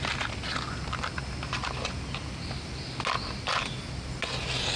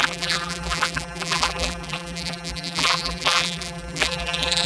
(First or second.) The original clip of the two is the first